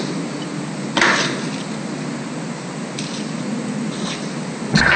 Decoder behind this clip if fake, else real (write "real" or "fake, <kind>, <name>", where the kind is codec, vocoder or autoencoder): real